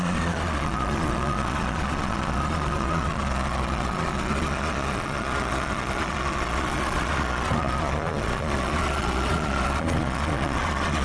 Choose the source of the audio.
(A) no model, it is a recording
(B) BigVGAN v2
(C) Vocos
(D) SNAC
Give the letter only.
C